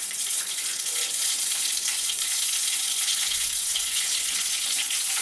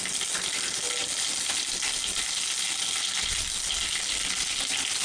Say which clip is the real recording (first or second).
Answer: second